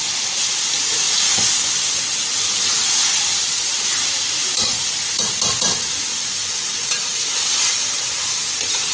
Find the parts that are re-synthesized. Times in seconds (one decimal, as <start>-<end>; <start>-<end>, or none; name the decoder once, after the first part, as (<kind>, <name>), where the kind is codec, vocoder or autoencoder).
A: 6.1-8.3 (vocoder, WaveNeXt)